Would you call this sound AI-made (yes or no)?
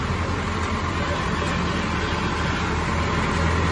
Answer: no